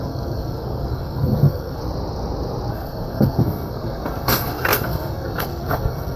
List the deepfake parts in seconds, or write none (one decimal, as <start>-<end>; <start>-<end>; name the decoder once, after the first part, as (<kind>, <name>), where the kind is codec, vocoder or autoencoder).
0.0-1.8 (codec, SNAC); 2.7-6.2